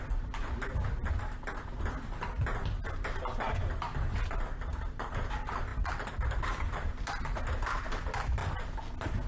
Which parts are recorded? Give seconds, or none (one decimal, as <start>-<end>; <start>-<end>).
0.0-9.3